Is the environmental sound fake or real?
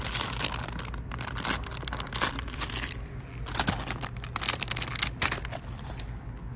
real